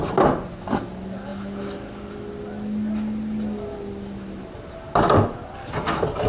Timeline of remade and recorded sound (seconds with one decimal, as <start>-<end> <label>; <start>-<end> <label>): 0.0-6.3 recorded